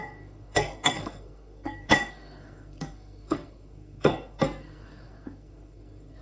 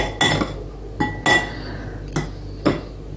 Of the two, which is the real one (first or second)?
second